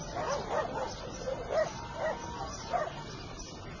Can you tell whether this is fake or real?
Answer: real